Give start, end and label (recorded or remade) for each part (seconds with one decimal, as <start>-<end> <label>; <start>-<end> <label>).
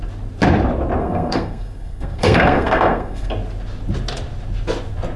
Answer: 0.0-1.0 recorded; 1.0-3.3 remade; 3.3-5.2 recorded